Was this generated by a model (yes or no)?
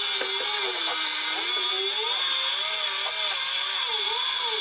no